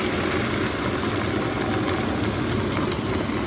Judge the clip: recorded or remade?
recorded